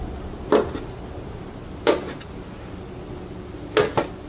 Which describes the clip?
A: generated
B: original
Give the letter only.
B